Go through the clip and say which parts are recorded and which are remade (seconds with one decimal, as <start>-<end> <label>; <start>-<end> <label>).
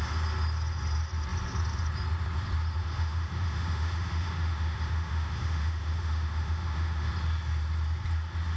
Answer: 0.0-2.8 recorded; 2.8-7.1 remade; 7.1-8.6 recorded